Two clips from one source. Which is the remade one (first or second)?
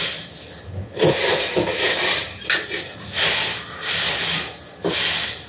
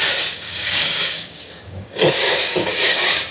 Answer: second